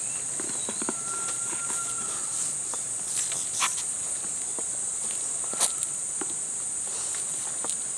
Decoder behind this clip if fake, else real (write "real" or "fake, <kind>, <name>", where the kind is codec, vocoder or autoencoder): real